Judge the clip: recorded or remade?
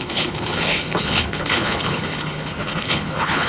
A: remade